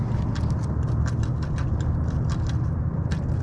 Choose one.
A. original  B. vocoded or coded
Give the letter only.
A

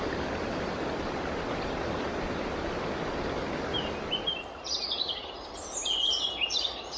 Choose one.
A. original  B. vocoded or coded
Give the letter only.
A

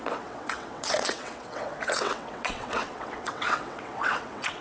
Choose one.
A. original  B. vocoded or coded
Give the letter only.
B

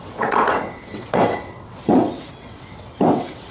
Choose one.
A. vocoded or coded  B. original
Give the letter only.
A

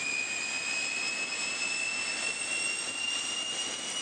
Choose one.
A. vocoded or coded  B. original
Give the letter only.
B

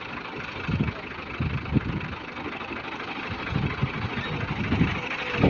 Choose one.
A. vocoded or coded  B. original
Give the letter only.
B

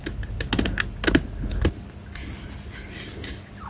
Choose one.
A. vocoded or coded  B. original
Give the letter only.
B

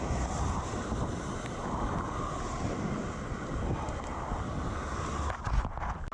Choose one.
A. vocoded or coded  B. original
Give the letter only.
B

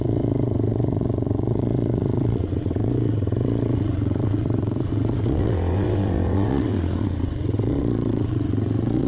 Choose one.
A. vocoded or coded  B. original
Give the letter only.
A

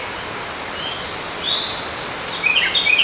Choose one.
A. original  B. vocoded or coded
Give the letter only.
A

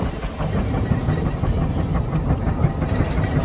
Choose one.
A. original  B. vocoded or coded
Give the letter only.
A